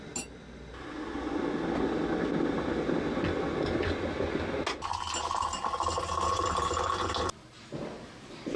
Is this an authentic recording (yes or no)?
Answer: yes